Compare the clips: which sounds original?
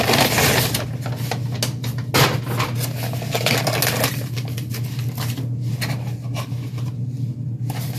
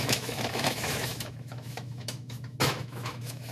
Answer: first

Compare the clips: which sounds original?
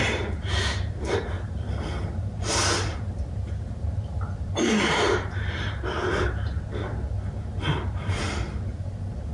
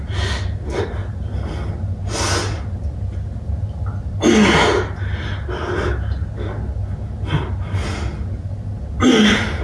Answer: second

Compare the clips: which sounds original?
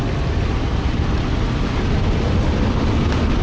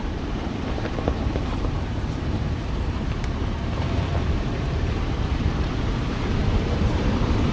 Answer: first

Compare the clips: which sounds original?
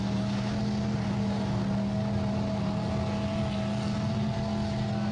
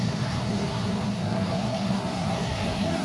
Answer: first